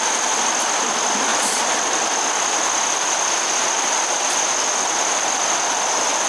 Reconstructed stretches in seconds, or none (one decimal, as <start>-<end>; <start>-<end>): none